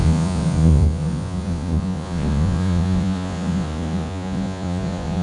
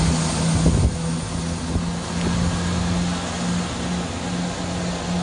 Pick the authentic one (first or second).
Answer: second